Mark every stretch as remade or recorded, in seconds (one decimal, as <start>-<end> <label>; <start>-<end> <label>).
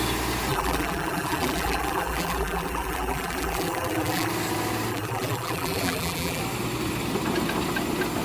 0.0-0.5 recorded; 0.5-4.3 remade; 4.3-4.9 recorded; 4.9-6.4 remade; 6.4-8.2 recorded